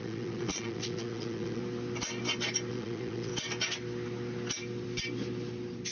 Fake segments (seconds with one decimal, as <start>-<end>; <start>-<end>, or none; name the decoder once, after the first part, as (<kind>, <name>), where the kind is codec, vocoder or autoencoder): 0.0-1.6 (vocoder, Vocos); 2.7-3.3